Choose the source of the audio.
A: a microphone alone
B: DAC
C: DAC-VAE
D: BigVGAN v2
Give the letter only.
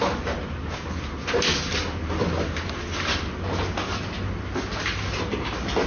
A